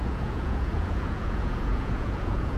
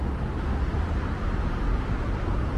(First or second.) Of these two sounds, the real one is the second